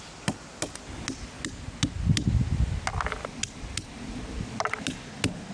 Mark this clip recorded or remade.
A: recorded